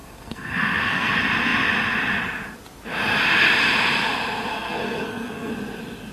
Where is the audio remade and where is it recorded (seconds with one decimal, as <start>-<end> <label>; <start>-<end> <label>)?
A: 0.0-1.1 remade; 1.1-4.5 recorded; 4.5-5.5 remade; 5.5-6.1 recorded